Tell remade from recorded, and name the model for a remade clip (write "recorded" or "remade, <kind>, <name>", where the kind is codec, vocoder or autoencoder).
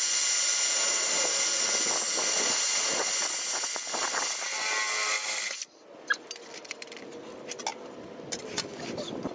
recorded